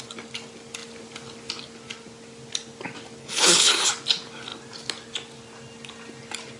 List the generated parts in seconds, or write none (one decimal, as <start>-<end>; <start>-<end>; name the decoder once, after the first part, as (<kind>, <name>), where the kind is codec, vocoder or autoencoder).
3.2-3.9 (codec, HILCodec)